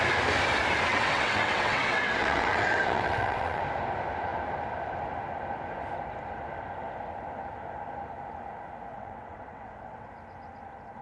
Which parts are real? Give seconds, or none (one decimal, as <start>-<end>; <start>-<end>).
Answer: 0.0-0.9; 3.6-8.9; 10.1-11.0